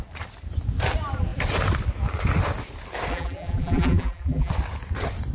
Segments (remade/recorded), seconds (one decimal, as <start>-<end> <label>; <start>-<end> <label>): 0.0-3.1 recorded; 3.1-4.5 remade; 4.5-5.3 recorded